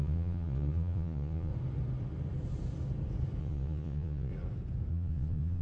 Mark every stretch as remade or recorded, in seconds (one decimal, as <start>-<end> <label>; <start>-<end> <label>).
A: 0.0-1.5 remade; 1.5-3.4 recorded; 3.4-4.3 remade; 4.3-4.9 recorded; 4.9-5.6 remade